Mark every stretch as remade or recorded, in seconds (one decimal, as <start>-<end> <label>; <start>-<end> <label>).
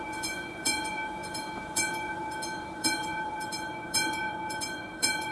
0.0-5.3 remade